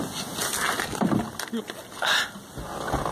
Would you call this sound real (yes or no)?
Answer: yes